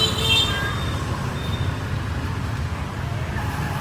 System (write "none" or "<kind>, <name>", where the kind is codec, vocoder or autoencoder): none